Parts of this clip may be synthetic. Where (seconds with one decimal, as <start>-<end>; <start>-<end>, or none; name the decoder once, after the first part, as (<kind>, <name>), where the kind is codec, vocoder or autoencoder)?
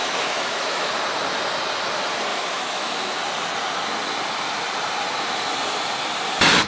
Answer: 0.0-0.9 (autoencoder, DAC-VAE); 2.3-3.2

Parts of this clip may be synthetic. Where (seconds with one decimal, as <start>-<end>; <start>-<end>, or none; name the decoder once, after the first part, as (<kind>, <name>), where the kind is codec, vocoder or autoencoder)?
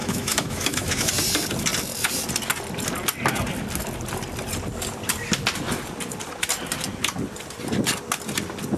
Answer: 0.0-1.1 (autoencoder, DAC-VAE)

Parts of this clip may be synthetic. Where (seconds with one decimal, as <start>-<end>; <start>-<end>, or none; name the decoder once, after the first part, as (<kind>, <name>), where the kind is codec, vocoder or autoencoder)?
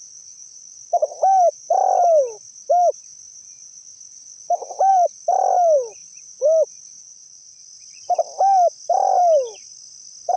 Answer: none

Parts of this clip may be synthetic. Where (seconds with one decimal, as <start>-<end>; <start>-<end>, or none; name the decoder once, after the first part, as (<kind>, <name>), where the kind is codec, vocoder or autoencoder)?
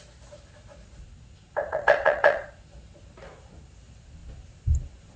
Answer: 1.7-2.5 (vocoder, WaveNeXt)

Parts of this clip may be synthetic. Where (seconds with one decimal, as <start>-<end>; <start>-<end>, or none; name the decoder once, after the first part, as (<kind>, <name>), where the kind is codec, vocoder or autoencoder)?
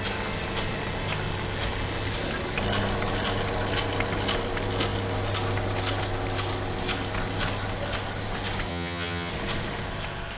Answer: 8.7-9.3 (vocoder, HiFi-GAN)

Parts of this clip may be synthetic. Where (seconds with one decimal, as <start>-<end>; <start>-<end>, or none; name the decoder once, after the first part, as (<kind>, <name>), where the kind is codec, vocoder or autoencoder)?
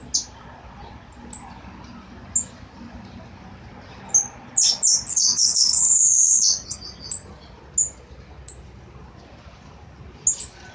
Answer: 5.1-6.8 (codec, SNAC)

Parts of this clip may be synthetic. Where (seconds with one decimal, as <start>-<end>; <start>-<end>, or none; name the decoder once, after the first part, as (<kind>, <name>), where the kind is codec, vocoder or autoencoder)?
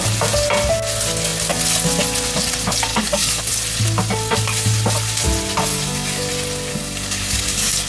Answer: 2.9-3.4 (codec, DAC); 5.7-6.3; 6.7-7.9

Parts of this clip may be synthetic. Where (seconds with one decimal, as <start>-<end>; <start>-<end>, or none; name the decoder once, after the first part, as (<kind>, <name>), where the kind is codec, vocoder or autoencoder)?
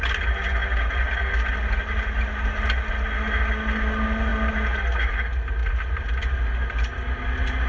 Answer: none